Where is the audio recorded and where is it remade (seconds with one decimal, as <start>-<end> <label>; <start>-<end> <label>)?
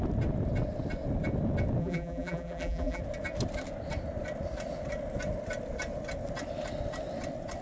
0.0-1.8 recorded; 1.8-3.0 remade; 3.0-7.6 recorded